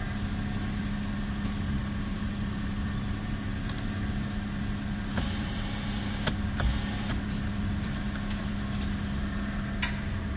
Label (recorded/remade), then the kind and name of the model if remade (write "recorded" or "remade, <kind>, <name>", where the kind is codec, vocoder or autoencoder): recorded